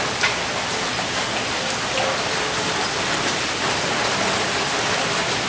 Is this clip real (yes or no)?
yes